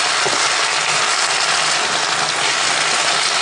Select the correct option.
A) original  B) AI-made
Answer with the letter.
A